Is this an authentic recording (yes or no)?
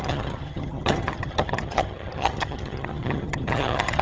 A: no